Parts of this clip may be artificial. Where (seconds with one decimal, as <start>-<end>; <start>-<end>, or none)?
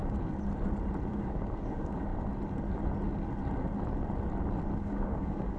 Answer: 1.1-2.1; 4.8-5.6